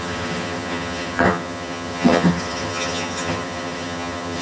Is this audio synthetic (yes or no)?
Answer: yes